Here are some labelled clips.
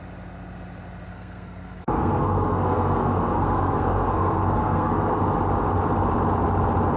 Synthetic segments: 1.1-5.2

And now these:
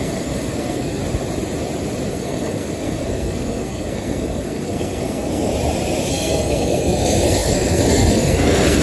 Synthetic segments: 0.0-1.0; 2.1-5.5; 6.1-8.8